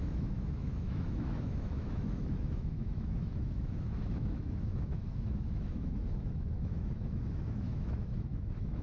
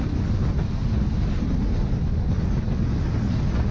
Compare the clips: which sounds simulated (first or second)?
first